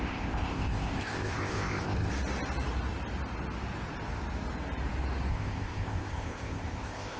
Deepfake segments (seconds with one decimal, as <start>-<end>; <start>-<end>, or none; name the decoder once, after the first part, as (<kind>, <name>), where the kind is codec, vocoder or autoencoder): 0.0-2.1 (codec, ZipCodec); 5.3-7.2